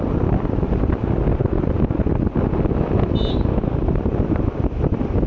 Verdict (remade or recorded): recorded